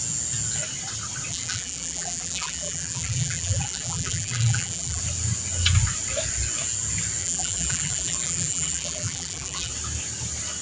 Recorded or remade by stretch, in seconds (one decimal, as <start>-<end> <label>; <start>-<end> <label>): 0.0-1.3 recorded; 1.3-5.0 remade; 5.0-7.2 recorded; 7.2-9.7 remade; 9.7-10.6 recorded